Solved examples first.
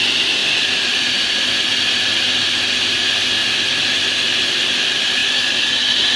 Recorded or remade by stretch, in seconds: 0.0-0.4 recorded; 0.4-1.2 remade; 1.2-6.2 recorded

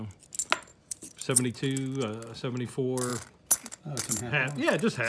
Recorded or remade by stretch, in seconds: 0.0-0.7 recorded; 0.7-1.5 remade; 1.5-5.1 recorded

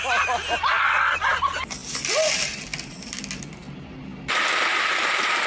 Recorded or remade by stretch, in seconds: 0.0-4.0 recorded; 4.0-5.5 remade

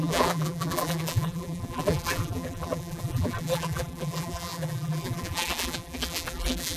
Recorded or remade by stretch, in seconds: 0.0-6.8 remade